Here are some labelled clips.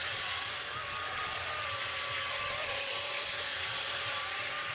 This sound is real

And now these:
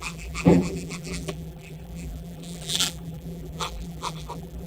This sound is fake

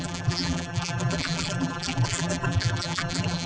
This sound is fake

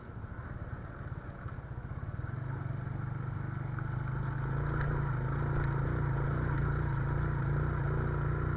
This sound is real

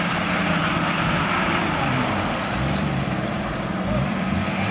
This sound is fake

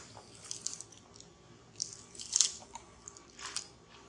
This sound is fake